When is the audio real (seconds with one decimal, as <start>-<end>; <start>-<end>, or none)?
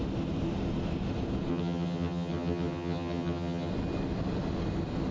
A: 0.0-1.5; 3.7-5.1